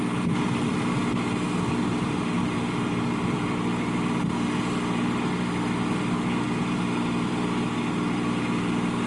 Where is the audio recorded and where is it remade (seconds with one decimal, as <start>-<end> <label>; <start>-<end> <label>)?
0.0-9.1 recorded